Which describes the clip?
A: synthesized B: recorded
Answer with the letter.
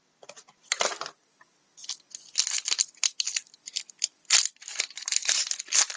A